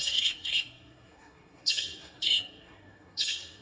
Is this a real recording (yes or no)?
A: no